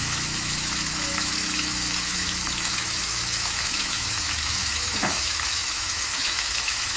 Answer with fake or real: fake